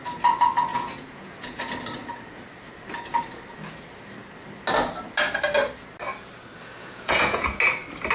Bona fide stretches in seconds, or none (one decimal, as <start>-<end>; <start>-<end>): 0.0-0.7; 1.6-6.8; 7.6-8.1